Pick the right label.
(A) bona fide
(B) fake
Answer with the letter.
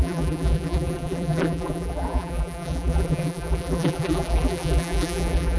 B